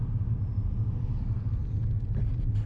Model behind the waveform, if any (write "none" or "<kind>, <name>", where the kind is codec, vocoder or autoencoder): none